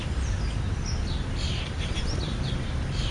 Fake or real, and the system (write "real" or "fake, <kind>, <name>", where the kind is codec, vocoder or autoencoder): real